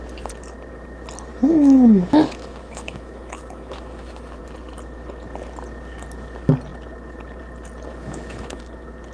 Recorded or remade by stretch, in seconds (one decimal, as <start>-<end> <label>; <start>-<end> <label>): 0.0-1.3 recorded; 1.3-4.4 remade; 4.4-7.9 recorded; 7.9-8.6 remade; 8.6-9.1 recorded